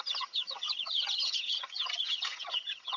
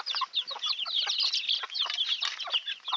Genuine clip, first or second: second